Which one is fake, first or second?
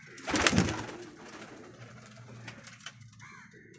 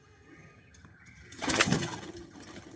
second